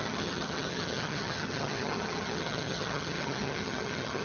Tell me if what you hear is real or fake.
fake